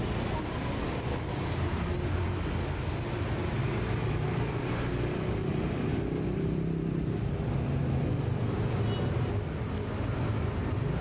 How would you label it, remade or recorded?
recorded